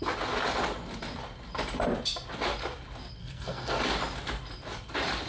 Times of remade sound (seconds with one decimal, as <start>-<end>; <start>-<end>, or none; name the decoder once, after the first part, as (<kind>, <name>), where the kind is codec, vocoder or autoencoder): 3.2-3.8 (codec, SNAC)